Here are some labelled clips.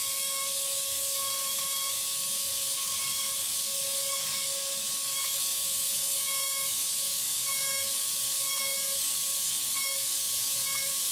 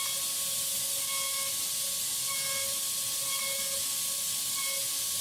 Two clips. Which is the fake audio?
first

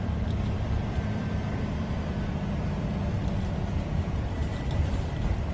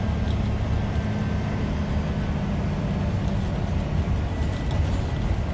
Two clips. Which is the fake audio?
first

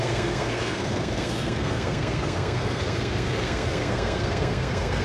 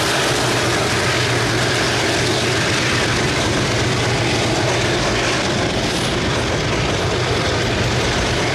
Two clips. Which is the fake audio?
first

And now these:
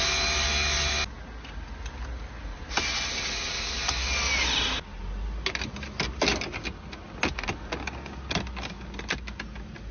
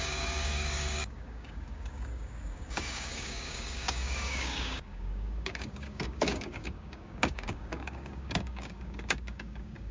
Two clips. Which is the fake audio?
second